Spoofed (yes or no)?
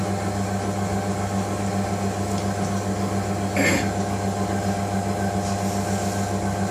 no